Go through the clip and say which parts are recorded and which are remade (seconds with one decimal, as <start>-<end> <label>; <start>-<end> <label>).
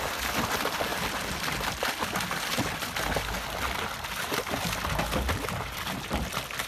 0.0-6.7 recorded